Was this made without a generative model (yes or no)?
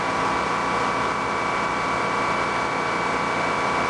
yes